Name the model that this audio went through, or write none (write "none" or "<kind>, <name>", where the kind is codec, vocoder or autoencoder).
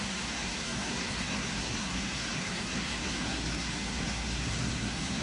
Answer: codec, SNAC